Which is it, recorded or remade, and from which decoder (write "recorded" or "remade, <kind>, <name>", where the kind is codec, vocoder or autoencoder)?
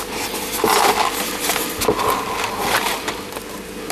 recorded